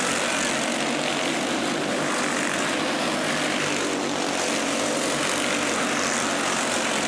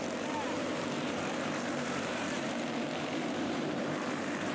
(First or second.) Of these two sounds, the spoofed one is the second